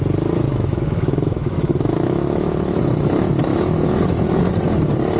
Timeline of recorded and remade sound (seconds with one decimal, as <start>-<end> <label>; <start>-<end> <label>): 0.0-0.5 recorded; 0.5-2.8 remade; 2.8-3.5 recorded; 3.5-4.4 remade; 4.4-5.2 recorded